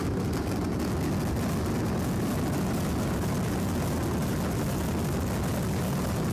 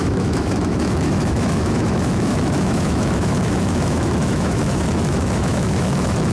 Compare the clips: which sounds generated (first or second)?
second